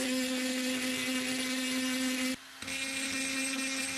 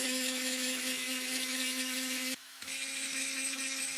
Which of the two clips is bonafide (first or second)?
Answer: first